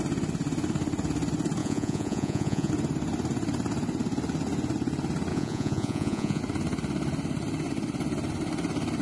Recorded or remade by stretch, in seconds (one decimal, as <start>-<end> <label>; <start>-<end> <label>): 0.0-1.6 recorded; 1.6-2.7 remade; 2.7-5.3 recorded; 5.3-6.4 remade; 6.4-9.0 recorded